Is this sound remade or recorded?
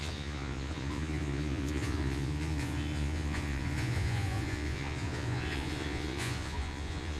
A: remade